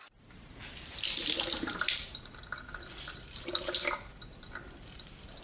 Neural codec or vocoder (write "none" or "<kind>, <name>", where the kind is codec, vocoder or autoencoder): none